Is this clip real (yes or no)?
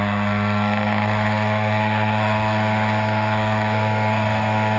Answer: no